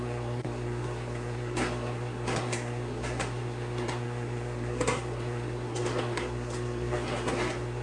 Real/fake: fake